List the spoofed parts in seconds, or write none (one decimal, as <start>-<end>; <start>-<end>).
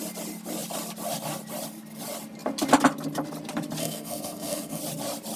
3.8-4.8